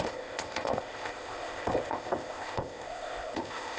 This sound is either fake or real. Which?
fake